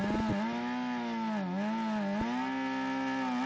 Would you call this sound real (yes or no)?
yes